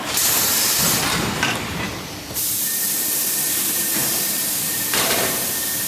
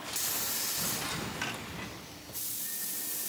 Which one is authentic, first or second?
second